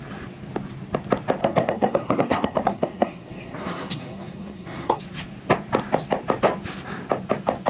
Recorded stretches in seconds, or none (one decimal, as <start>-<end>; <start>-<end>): 0.0-1.4; 5.0-7.7